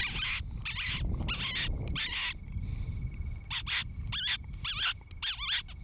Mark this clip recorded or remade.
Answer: recorded